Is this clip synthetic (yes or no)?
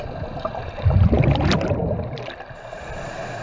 no